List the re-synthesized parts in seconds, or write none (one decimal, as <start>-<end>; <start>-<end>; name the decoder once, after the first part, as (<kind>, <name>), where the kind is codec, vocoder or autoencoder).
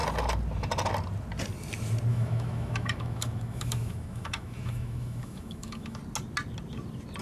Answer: 2.1-6.0 (autoencoder, DAC-VAE)